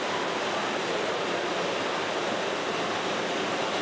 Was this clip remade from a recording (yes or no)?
no